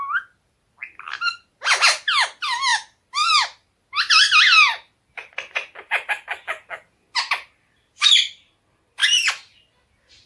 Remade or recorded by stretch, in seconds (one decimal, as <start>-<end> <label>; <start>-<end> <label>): 0.0-9.0 recorded; 9.0-9.6 remade; 9.6-10.3 recorded